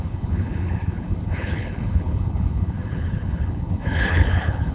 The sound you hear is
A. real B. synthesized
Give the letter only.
B